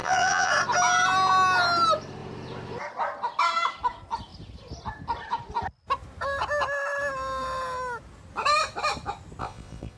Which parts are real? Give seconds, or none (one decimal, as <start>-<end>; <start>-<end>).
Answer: 0.5-9.4